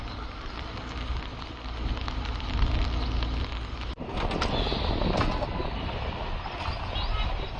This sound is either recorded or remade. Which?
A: recorded